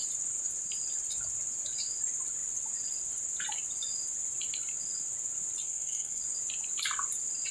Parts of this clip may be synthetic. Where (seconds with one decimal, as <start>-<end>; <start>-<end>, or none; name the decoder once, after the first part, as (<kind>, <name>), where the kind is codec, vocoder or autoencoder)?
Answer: 5.6-6.2 (codec, SNAC)

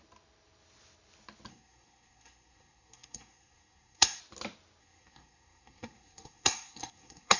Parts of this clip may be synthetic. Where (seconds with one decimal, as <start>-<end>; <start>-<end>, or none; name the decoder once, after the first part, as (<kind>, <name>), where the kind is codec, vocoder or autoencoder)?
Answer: 1.5-4.2 (codec, SNAC); 4.8-7.4

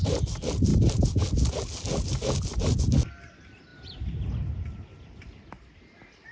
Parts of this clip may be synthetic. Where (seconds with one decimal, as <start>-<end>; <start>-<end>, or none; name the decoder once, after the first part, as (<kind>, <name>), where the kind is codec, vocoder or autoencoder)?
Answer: none

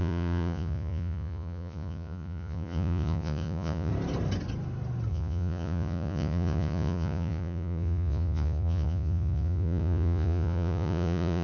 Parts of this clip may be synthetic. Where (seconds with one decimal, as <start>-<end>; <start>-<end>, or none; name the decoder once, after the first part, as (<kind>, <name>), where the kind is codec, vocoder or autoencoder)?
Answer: 0.0-3.9 (vocoder, Vocos); 5.1-11.4

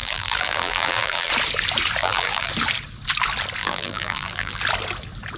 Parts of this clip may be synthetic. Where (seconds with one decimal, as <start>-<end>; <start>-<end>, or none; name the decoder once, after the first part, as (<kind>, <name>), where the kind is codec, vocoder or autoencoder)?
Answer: 0.0-1.3 (vocoder, BigVGAN v2); 2.0-2.5; 3.6-4.6